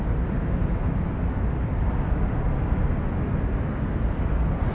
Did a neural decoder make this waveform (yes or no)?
no